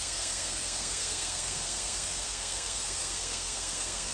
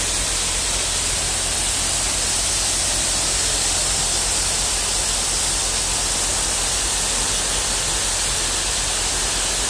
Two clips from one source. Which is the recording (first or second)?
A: second